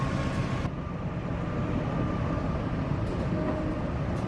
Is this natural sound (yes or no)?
yes